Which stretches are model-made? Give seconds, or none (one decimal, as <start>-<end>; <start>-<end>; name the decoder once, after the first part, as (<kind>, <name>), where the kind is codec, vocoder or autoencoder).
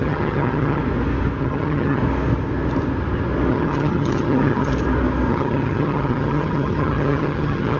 0.0-0.8 (vocoder, HiFi-GAN); 1.4-2.0; 3.5-4.7; 5.3-7.8